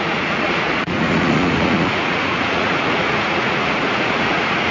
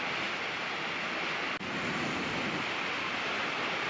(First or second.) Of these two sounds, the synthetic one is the first